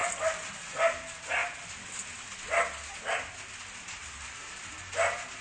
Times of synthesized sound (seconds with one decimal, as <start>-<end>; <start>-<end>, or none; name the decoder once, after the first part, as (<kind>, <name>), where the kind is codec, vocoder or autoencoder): 4.0-4.7 (vocoder, BigVGAN v2)